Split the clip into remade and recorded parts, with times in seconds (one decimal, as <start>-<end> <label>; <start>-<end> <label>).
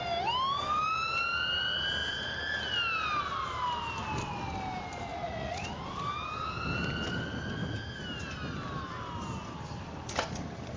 0.0-5.1 recorded; 5.1-5.8 remade; 5.8-10.8 recorded